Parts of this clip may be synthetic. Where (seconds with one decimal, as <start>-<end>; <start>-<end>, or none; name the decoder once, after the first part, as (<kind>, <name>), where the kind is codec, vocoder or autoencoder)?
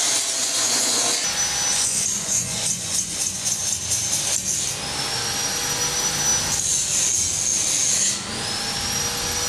0.4-1.0 (vocoder, Vocos); 1.7-3.6